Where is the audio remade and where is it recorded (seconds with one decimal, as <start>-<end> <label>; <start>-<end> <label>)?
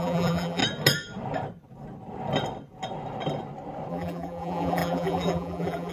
0.0-0.6 remade; 0.6-3.9 recorded; 3.9-5.9 remade